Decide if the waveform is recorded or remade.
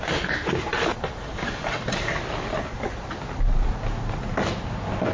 recorded